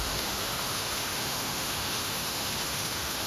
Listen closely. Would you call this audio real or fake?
fake